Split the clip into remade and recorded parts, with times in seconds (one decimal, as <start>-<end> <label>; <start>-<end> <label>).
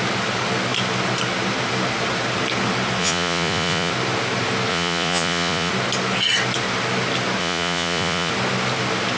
0.0-3.0 recorded; 3.0-3.9 remade; 3.9-4.7 recorded; 4.7-5.7 remade; 5.7-7.4 recorded; 7.4-8.3 remade; 8.3-9.2 recorded